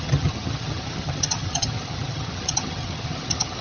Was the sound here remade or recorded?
remade